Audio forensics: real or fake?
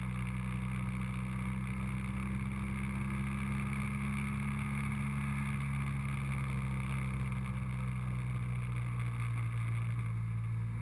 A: real